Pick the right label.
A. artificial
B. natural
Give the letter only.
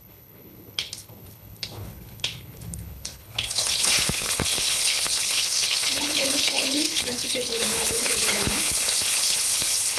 A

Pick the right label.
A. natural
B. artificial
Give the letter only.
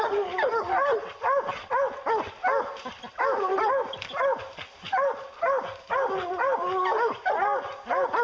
A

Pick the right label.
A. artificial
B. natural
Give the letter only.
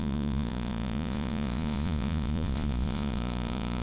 A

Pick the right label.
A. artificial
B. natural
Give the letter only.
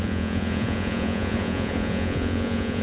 A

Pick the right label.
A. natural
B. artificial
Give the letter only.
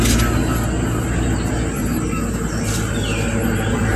A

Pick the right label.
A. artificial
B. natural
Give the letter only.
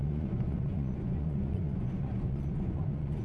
A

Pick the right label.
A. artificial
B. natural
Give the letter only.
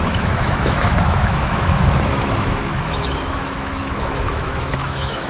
A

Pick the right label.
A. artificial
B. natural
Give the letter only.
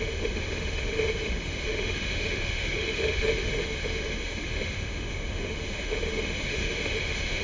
A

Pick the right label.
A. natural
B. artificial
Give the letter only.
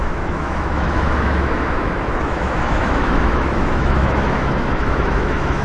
B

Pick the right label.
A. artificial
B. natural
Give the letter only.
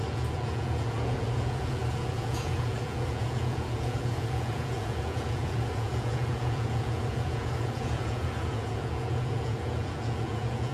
A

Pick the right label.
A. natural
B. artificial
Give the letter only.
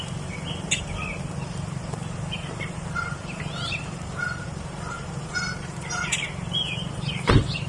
B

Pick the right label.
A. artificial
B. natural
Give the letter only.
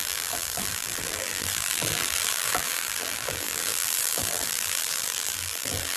A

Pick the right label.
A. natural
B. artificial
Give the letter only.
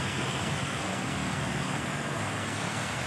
B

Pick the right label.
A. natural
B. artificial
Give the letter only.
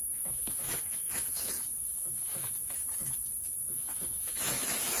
B